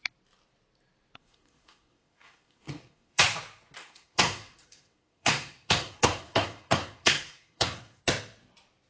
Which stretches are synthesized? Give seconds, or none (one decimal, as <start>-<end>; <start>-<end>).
1.2-3.2; 3.8-8.0